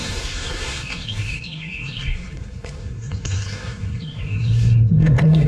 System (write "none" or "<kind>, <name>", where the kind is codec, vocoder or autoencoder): codec, SNAC